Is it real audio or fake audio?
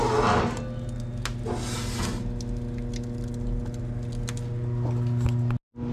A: real